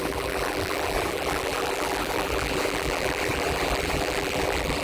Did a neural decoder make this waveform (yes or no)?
yes